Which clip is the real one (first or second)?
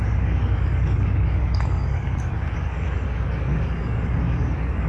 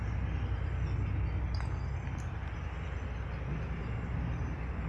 second